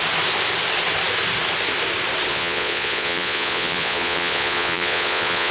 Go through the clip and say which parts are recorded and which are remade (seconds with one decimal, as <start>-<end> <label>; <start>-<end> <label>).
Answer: 0.0-2.3 recorded; 2.3-5.5 remade